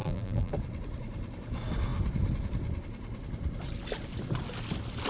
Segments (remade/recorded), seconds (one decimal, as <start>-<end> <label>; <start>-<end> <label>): 0.0-0.5 remade; 0.5-5.1 recorded